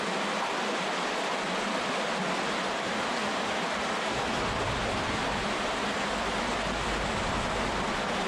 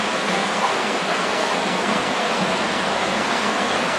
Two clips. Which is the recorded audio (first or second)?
first